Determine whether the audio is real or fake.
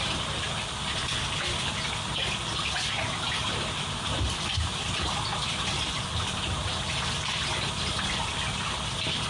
real